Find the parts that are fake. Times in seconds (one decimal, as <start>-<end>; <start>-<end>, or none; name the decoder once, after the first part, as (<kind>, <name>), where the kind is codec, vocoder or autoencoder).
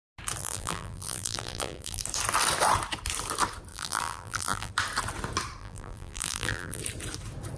0.4-2.0 (vocoder, BigVGAN v2); 3.7-4.7; 5.6-6.8